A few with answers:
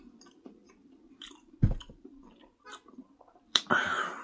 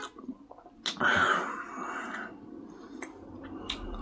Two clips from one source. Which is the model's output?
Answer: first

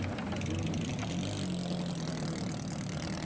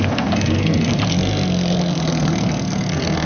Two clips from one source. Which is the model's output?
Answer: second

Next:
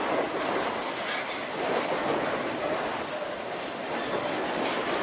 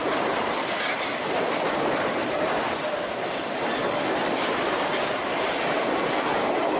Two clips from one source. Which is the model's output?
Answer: second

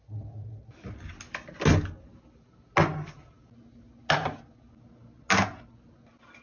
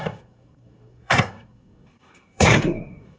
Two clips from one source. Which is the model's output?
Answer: second